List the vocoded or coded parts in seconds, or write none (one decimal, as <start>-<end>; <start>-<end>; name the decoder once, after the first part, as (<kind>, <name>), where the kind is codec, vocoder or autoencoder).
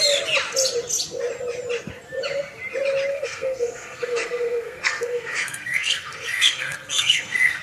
3.1-7.6 (codec, SNAC)